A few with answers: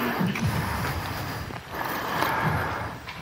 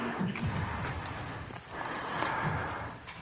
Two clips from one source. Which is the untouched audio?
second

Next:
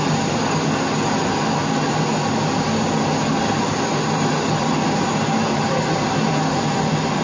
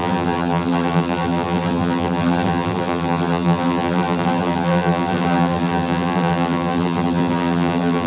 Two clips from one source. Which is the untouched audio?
first